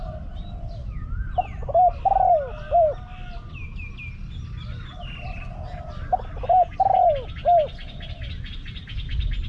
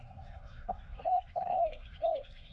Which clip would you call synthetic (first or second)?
second